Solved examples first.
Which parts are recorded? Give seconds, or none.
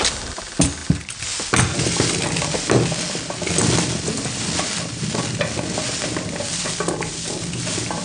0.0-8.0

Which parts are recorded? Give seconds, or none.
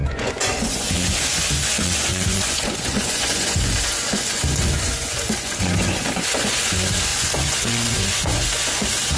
none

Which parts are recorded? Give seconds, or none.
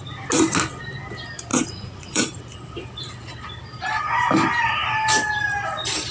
0.0-1.5; 2.2-6.1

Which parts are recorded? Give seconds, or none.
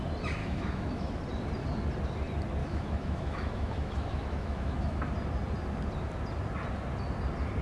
0.0-0.4; 1.2-2.6; 5.0-7.6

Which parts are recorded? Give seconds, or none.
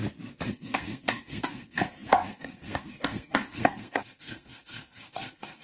0.0-0.5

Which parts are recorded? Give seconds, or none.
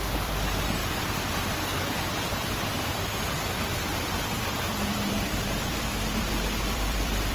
0.8-1.9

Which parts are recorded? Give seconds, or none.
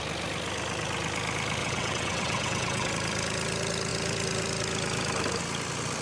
0.0-1.6; 2.9-6.0